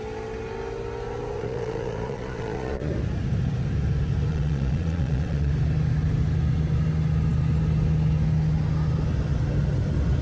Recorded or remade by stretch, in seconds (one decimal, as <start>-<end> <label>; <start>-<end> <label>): 0.0-1.4 recorded; 1.4-2.9 remade; 2.9-4.3 recorded; 4.3-5.5 remade; 5.5-10.2 recorded